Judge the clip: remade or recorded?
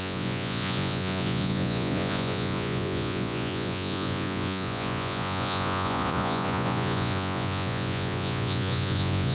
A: remade